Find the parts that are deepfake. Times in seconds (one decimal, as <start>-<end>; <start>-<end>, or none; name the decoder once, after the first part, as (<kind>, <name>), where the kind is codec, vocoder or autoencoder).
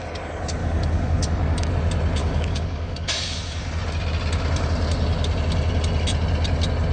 0.6-1.7 (codec, DAC); 2.2-3.4